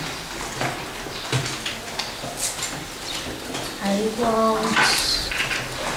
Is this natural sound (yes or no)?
yes